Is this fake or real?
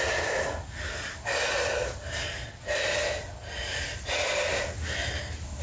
real